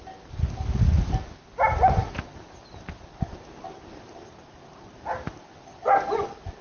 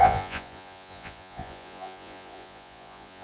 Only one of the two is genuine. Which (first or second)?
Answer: first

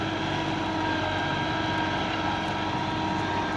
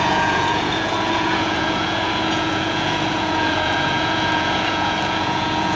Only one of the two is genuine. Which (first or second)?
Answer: first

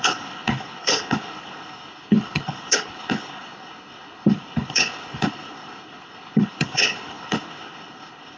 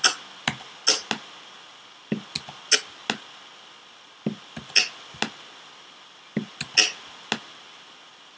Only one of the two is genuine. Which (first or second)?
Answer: second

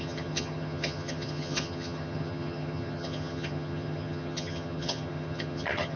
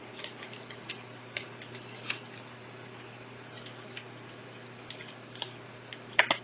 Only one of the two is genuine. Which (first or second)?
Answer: second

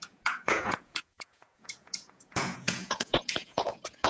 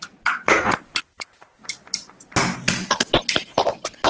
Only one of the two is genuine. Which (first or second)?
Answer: second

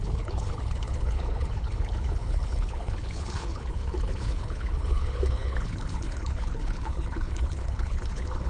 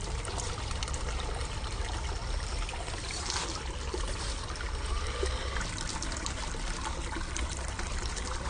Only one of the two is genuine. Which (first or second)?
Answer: second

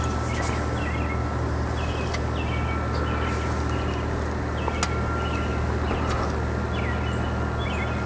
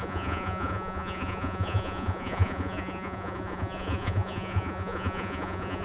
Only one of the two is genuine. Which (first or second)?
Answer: first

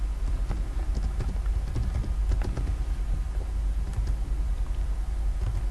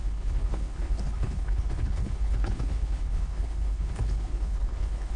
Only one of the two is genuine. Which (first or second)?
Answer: first